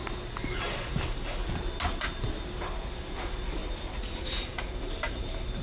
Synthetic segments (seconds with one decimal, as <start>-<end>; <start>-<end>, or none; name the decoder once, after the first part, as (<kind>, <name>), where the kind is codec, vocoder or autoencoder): 0.6-1.4 (vocoder, BigVGAN v2); 2.9-3.6; 4.2-5.6